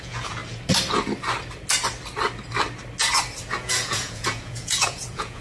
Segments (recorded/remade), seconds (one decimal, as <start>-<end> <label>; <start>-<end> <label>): 0.0-0.4 remade; 0.4-3.6 recorded; 3.6-5.4 remade